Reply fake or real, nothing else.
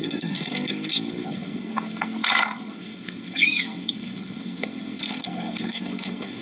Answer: fake